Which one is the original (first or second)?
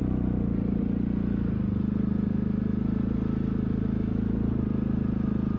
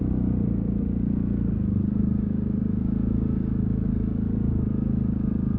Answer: first